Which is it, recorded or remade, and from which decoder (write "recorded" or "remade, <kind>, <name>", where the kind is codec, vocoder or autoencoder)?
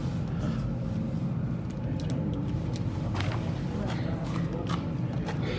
recorded